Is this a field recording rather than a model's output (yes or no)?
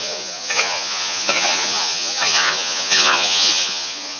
no